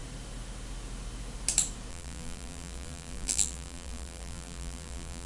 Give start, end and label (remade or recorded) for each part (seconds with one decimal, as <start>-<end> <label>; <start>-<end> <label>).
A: 0.0-1.9 recorded; 1.9-5.3 remade